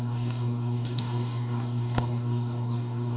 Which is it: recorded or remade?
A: remade